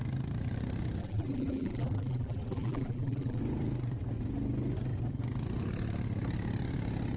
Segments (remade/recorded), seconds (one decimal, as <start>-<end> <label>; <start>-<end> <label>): 0.0-1.0 recorded; 1.0-3.4 remade; 3.4-7.2 recorded